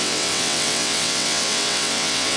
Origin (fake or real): fake